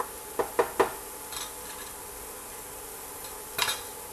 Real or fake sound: real